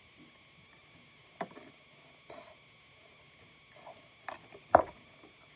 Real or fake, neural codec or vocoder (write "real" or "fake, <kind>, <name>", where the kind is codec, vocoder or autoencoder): real